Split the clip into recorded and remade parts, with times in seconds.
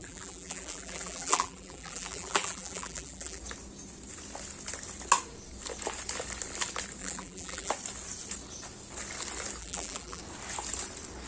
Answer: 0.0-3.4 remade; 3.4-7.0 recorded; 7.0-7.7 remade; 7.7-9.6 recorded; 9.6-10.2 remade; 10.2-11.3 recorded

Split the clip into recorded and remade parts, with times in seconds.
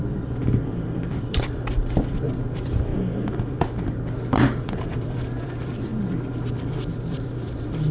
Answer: 0.0-2.9 remade; 2.9-3.5 recorded; 3.5-5.9 remade; 5.9-6.9 recorded; 6.9-7.9 remade